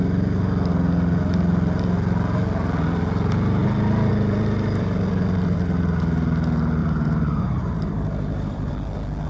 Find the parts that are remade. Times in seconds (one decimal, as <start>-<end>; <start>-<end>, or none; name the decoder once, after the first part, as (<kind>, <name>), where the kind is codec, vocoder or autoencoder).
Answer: 6.8-8.7 (vocoder, BigVGAN v2)